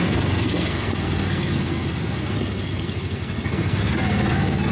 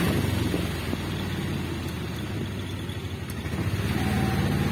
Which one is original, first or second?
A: second